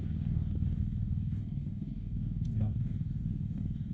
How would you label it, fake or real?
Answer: fake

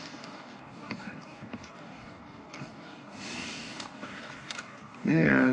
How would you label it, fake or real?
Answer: fake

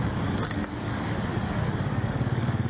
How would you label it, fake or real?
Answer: fake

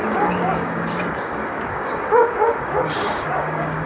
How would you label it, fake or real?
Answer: fake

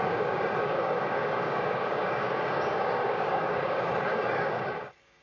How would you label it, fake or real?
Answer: fake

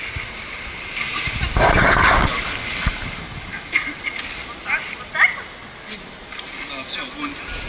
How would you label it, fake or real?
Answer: real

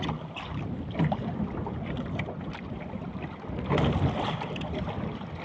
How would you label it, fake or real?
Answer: real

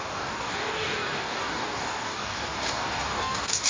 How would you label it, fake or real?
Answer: fake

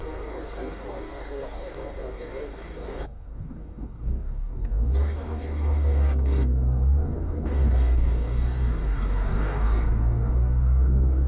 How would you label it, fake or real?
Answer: fake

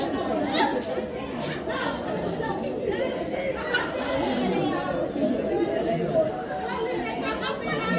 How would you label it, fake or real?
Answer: real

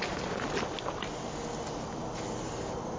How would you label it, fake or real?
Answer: real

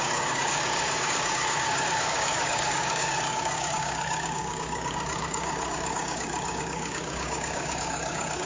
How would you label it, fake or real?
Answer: fake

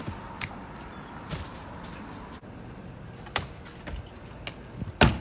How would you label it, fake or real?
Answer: real